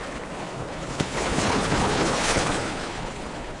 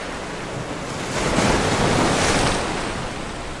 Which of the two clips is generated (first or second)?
first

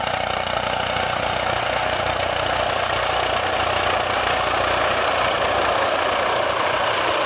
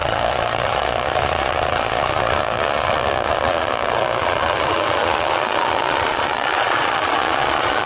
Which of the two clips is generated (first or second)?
second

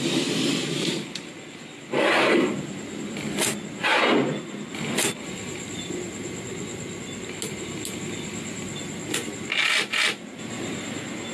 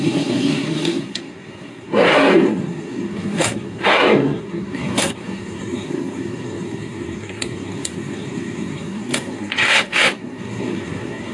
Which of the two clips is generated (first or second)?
second